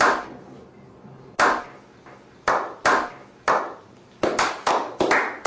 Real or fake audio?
real